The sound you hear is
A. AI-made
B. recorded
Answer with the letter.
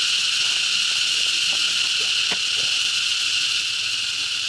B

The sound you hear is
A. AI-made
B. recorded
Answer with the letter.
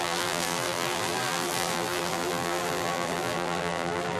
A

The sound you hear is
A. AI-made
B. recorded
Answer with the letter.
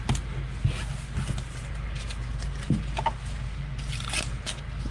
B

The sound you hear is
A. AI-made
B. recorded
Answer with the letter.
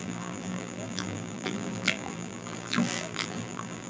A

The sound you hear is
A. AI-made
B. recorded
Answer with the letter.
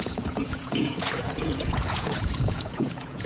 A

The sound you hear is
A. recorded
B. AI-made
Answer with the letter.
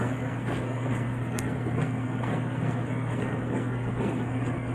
B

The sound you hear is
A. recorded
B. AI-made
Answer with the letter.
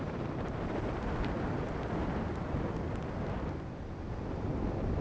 A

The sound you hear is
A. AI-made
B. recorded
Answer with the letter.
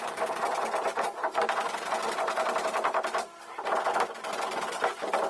A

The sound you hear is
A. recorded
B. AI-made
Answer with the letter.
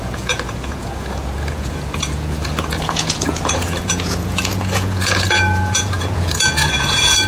B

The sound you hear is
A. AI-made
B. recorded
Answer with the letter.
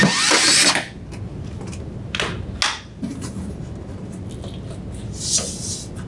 B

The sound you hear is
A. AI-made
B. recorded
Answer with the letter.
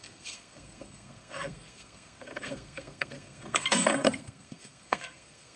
A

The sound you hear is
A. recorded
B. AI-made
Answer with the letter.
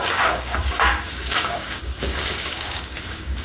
B